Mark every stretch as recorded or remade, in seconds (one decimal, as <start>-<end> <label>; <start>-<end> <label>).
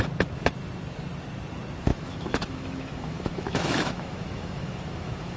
0.0-1.9 recorded; 1.9-5.4 remade